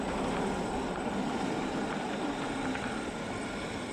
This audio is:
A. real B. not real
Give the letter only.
A